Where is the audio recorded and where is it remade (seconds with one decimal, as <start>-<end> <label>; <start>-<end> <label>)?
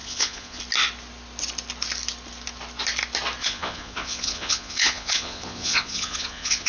0.0-0.6 remade; 0.6-3.4 recorded; 3.4-6.7 remade